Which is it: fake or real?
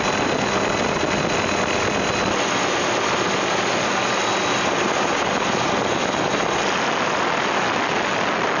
real